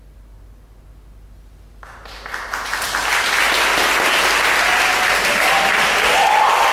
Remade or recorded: recorded